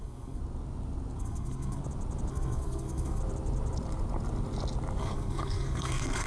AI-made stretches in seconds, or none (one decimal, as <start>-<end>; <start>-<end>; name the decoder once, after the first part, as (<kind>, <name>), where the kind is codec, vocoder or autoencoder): 0.0-0.4 (codec, SNAC); 1.2-1.8; 2.3-3.2; 5.0-6.3

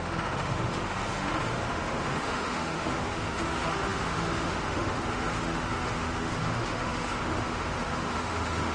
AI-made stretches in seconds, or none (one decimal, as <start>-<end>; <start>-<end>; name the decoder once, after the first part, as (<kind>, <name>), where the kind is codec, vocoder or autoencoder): 0.0-8.7 (autoencoder, DAC-VAE)

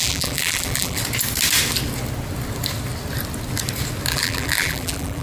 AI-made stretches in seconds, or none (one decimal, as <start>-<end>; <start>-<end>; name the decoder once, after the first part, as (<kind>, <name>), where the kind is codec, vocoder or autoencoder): 0.0-1.0 (vocoder, BigVGAN v2); 4.1-5.2